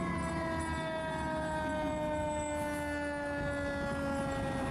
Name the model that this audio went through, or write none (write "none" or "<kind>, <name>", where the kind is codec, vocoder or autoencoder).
none